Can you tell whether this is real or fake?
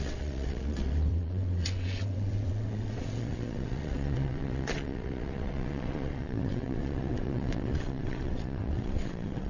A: fake